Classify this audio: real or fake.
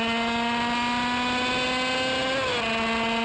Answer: real